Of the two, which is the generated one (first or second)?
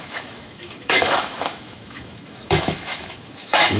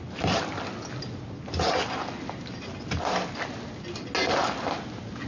first